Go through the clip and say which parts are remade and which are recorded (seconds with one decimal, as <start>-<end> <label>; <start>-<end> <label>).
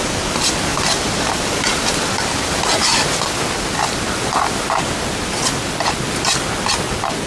0.0-0.7 recorded; 0.7-4.7 remade; 4.7-7.3 recorded